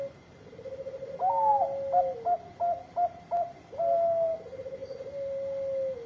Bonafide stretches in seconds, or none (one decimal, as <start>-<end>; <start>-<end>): 0.0-6.1